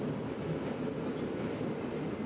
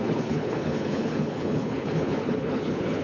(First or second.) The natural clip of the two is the first